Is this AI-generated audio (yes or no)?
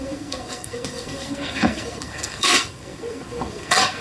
yes